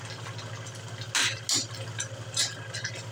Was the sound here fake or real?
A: real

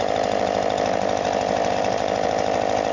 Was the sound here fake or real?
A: fake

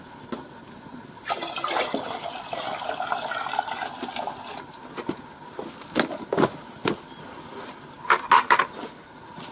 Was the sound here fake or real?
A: real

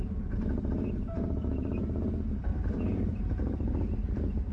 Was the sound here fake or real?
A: fake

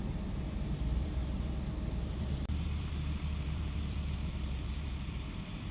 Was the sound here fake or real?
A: fake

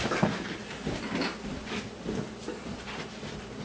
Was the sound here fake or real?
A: real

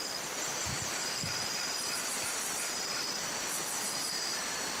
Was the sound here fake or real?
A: fake